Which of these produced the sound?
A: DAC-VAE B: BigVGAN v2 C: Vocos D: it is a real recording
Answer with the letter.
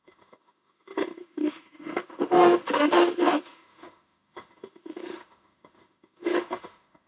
A